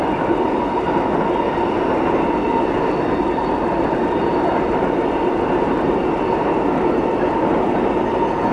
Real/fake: real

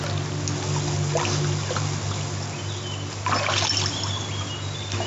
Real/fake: real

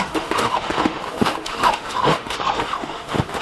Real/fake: fake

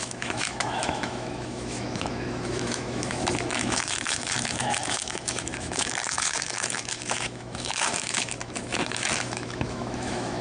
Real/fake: fake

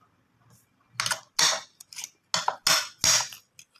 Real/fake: real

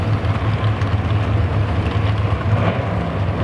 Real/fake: real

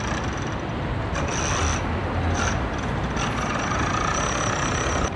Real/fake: real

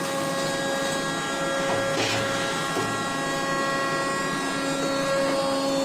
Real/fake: real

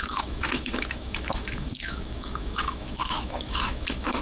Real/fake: fake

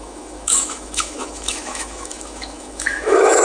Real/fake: fake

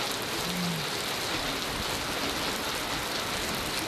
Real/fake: real